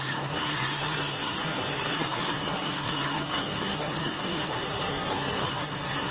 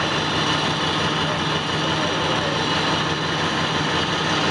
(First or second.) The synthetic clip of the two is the first